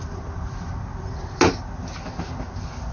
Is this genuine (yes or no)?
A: yes